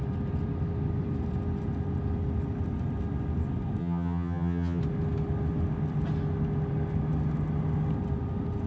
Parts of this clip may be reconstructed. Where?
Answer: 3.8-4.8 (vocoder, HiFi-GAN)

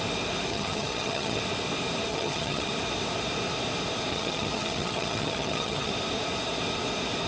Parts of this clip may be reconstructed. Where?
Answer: 0.5-1.4 (vocoder, HiFi-GAN); 2.1-2.7; 4.1-5.9